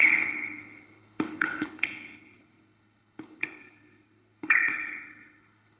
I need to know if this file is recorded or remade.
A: remade